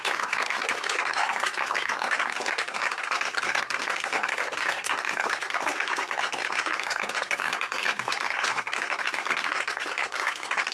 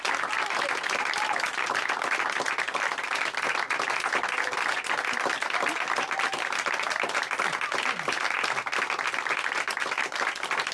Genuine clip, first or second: second